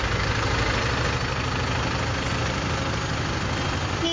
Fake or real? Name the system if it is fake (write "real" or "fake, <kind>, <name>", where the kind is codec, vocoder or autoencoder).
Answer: real